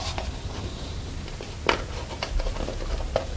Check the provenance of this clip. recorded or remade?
recorded